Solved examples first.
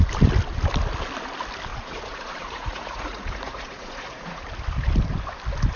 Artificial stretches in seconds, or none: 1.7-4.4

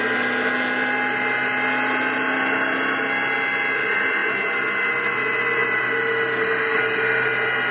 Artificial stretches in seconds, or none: none

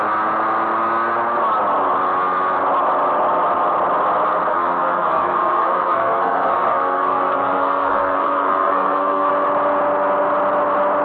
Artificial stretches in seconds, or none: 4.5-9.3

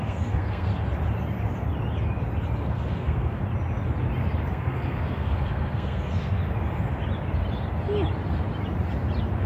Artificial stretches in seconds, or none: 0.0-0.7; 2.6-3.4; 4.5-6.4

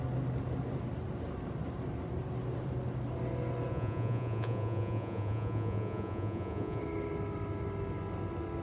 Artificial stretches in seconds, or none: 3.7-6.8

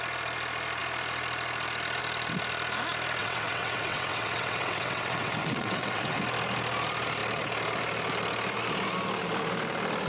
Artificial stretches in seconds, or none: 3.2-6.2

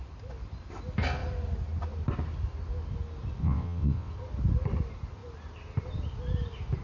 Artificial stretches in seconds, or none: 3.4-4.1